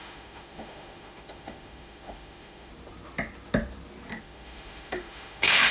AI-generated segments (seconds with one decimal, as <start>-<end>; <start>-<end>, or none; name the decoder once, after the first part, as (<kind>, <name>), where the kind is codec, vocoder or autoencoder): 0.0-2.7 (autoencoder, DAC-VAE); 4.2-5.7